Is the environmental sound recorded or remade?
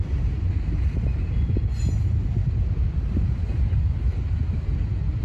recorded